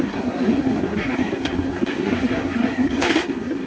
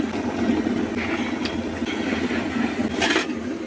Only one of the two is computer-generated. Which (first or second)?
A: first